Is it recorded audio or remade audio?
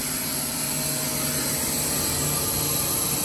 recorded